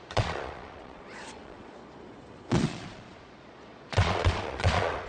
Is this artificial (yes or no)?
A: yes